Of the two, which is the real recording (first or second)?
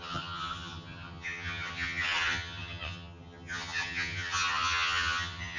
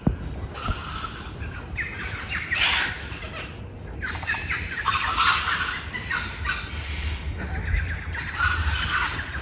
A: second